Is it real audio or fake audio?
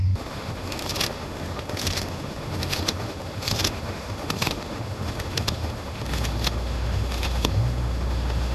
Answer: fake